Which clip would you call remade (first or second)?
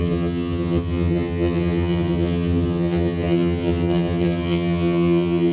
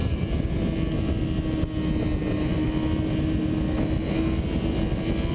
first